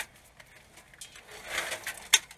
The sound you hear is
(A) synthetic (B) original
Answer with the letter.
B